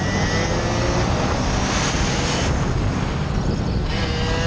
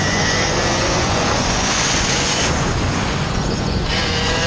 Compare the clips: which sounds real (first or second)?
first